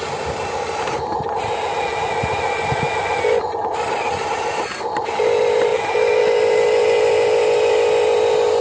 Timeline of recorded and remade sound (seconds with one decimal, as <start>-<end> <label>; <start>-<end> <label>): 0.0-8.6 recorded